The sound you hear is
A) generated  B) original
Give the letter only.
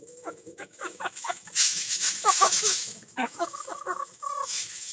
A